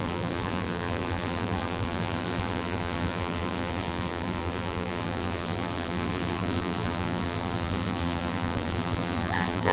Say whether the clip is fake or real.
fake